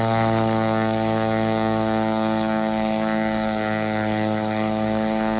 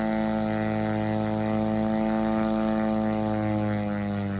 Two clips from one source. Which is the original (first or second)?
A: second